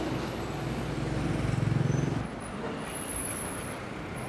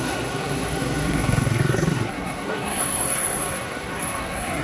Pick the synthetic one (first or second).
second